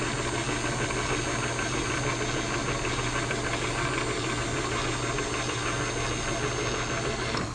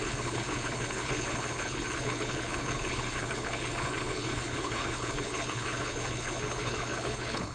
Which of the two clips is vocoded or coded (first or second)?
second